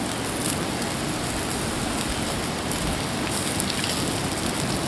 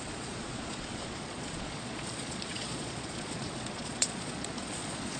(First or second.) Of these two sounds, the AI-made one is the second